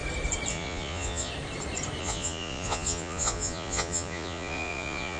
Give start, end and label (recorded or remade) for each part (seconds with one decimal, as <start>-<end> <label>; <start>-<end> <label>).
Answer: 0.0-0.5 recorded; 0.5-1.3 remade; 1.3-2.0 recorded; 2.0-5.2 remade